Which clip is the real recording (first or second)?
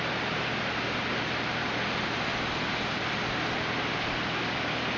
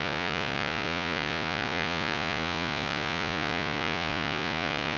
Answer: first